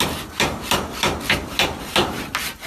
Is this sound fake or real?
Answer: real